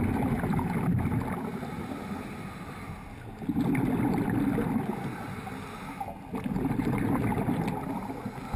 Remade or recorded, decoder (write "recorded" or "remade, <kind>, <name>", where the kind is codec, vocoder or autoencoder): recorded